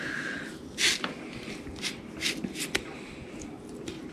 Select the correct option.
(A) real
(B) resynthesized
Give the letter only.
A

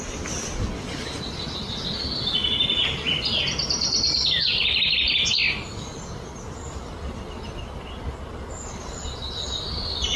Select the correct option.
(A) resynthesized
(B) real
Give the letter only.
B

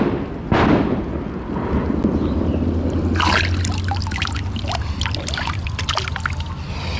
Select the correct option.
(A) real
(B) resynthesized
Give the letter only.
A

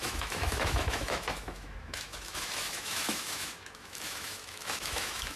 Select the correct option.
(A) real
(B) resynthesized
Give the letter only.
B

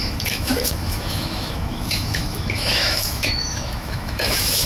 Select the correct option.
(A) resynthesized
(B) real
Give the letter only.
A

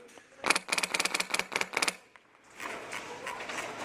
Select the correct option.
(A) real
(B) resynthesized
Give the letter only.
A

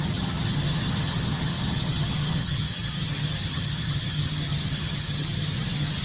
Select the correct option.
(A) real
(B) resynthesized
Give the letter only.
B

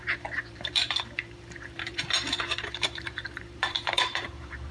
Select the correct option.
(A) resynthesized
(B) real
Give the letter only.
A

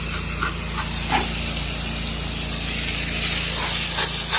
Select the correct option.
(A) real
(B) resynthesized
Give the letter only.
A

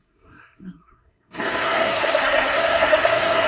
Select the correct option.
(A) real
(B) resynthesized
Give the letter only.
B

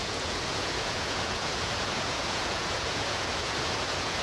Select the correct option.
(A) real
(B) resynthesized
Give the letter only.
B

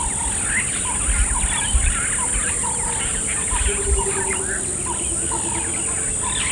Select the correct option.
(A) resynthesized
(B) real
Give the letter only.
B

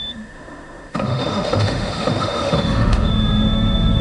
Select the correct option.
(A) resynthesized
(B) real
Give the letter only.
A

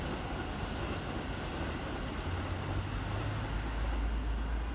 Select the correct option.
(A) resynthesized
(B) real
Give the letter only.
B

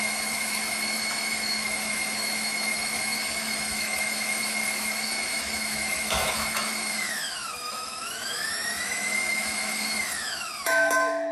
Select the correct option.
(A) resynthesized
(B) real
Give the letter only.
A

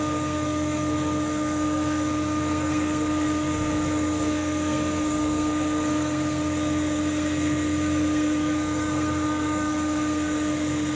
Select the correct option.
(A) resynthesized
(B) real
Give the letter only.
A